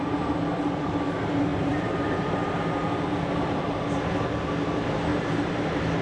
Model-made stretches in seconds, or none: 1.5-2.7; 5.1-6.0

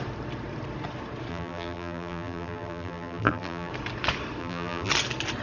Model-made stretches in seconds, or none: 1.3-3.7; 4.4-4.9

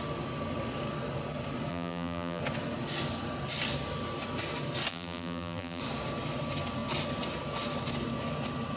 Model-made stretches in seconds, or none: 1.7-2.4; 4.9-5.8

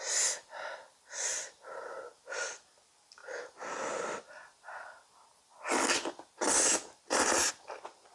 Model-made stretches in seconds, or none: none

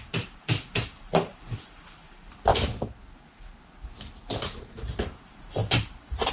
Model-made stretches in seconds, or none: 0.0-2.5; 4.3-5.6

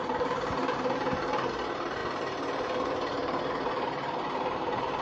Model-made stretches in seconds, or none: 0.0-1.5; 2.0-5.0

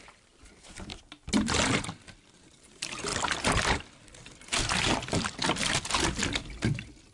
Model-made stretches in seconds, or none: 0.0-0.9; 2.4-3.1